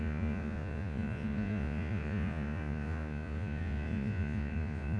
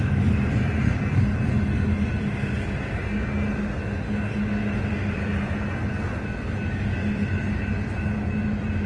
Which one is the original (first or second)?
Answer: second